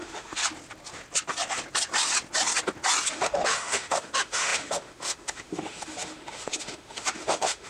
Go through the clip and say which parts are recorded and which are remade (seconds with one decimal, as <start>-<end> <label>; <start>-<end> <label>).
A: 0.0-0.4 remade; 0.4-3.1 recorded; 3.1-7.7 remade